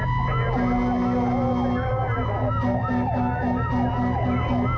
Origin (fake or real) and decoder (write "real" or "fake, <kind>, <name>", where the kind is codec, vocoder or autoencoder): real